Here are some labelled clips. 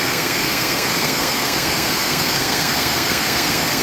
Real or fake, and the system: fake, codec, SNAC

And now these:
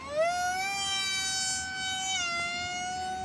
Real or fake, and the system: real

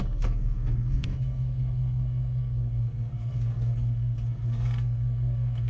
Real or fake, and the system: fake, codec, SNAC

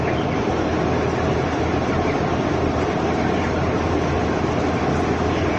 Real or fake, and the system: real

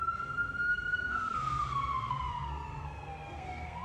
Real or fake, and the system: fake, codec, SNAC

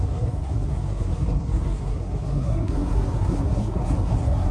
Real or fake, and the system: fake, codec, SNAC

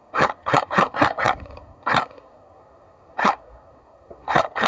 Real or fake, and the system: fake, codec, SNAC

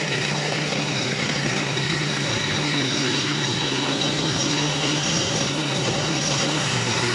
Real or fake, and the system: fake, codec, SNAC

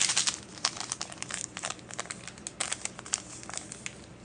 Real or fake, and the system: real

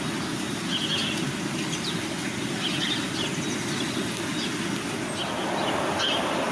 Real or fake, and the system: real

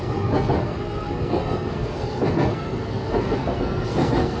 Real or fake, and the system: fake, codec, SNAC